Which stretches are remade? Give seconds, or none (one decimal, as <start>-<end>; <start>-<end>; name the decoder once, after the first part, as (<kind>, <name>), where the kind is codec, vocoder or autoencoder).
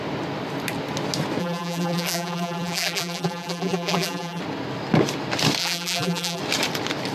1.4-4.4 (vocoder, BigVGAN v2); 5.6-6.4